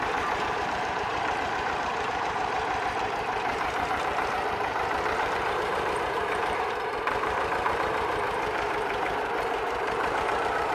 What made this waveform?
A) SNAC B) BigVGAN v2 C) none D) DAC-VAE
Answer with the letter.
B